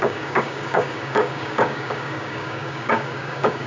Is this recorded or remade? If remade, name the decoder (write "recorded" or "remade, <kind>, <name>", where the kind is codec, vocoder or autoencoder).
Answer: remade, codec, DAC